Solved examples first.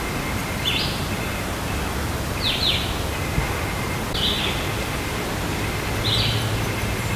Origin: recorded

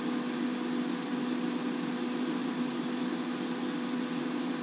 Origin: recorded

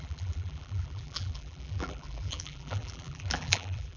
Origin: remade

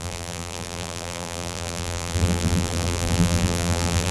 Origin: remade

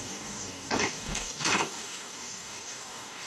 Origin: remade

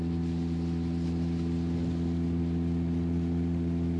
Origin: recorded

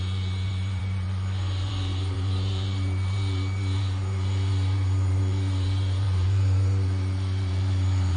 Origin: remade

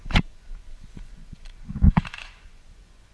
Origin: remade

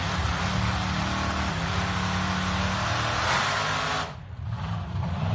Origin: recorded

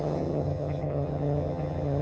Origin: remade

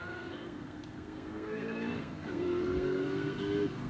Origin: remade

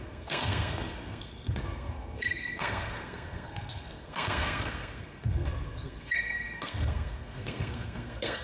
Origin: remade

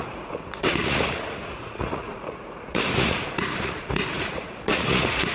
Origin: remade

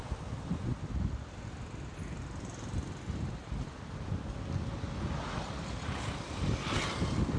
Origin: recorded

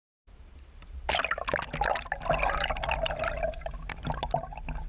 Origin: recorded